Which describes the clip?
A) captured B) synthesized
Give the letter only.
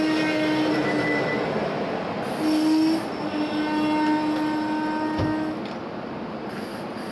A